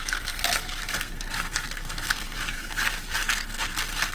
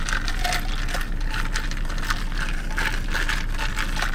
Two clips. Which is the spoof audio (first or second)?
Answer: first